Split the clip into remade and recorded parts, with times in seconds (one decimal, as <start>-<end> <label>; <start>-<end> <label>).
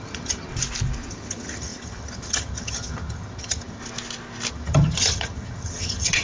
0.0-0.5 remade; 0.5-1.1 recorded; 1.1-3.8 remade; 3.8-4.5 recorded; 4.5-6.2 remade